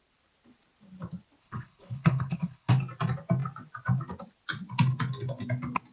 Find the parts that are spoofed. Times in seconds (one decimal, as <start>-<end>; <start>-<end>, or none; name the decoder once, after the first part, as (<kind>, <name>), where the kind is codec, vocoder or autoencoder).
1.4-2.7 (codec, HILCodec)